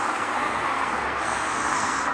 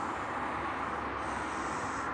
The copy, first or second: first